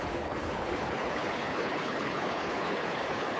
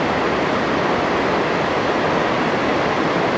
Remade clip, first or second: first